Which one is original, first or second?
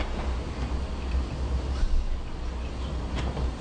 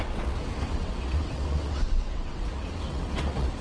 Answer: first